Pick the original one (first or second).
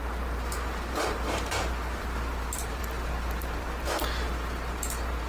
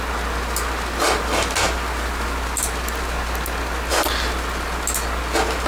second